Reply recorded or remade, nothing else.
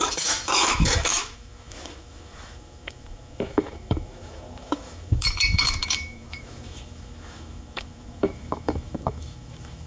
remade